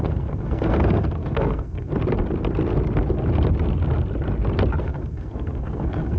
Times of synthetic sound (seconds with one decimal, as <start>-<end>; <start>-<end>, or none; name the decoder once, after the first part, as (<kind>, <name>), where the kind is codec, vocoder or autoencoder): 0.0-1.9 (codec, SNAC); 4.8-6.2